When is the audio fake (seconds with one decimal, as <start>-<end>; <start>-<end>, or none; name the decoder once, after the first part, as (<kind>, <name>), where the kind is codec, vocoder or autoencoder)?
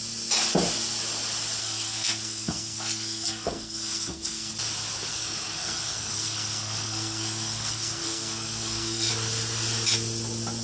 1.6-4.5 (codec, SNAC); 5.1-9.1